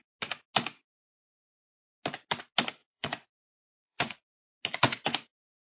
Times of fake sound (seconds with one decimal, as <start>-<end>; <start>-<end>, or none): 2.8-4.5